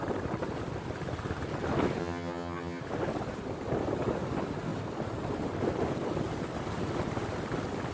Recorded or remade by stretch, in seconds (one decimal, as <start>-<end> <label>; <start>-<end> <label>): 0.0-2.0 recorded; 2.0-2.8 remade; 2.8-7.9 recorded